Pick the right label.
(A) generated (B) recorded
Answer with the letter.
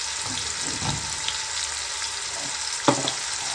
B